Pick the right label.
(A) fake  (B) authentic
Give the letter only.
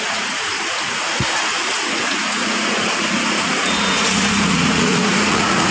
A